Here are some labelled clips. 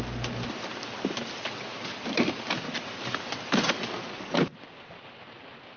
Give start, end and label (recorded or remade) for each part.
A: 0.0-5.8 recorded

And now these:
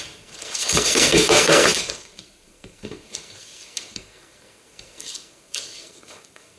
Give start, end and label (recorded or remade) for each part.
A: 0.0-6.6 remade

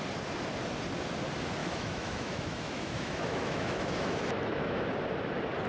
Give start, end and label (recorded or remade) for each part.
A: 0.0-1.6 recorded; 1.6-4.8 remade; 4.8-5.7 recorded

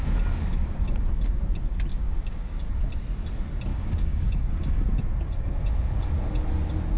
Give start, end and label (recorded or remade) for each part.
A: 0.0-1.9 recorded; 1.9-2.6 remade; 2.6-3.7 recorded; 3.7-4.5 remade; 4.5-7.0 recorded